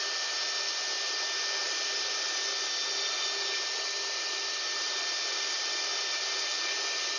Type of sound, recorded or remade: recorded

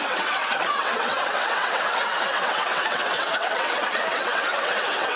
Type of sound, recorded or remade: remade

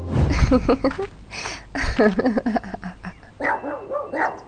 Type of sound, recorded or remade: recorded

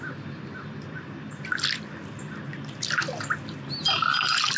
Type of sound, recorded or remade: recorded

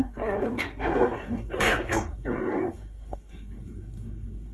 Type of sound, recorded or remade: remade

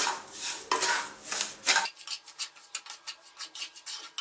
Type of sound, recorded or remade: recorded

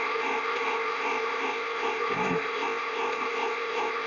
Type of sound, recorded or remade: remade